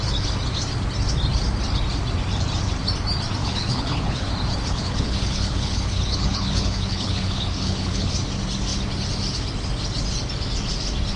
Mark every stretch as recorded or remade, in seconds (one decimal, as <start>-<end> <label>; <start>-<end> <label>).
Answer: 0.0-3.4 recorded; 3.4-4.3 remade; 4.3-4.7 recorded; 4.7-8.1 remade; 8.1-11.2 recorded

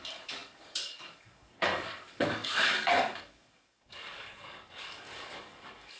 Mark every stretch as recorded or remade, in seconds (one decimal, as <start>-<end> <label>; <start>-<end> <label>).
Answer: 0.0-6.0 remade

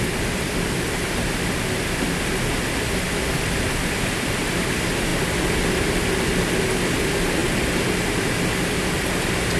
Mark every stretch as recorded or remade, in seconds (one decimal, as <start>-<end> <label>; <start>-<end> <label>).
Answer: 0.0-9.6 recorded

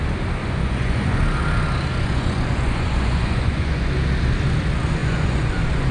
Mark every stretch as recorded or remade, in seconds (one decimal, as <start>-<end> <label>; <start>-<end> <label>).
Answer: 0.0-0.4 recorded; 0.4-1.2 remade; 1.2-1.9 recorded; 1.9-3.9 remade; 3.9-5.0 recorded; 5.0-5.9 remade